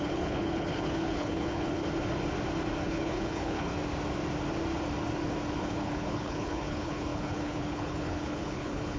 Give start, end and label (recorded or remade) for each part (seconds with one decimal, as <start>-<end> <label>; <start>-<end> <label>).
0.0-1.8 remade; 1.8-2.9 recorded; 2.9-3.7 remade; 3.7-5.6 recorded; 5.6-9.0 remade